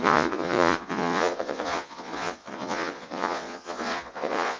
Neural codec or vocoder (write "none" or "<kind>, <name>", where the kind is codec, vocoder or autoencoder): vocoder, Vocos